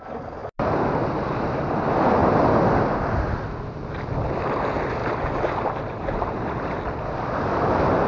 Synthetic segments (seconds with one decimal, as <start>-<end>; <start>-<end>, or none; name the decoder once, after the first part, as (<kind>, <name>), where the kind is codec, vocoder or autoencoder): 5.0-6.8 (vocoder, BigVGAN v2)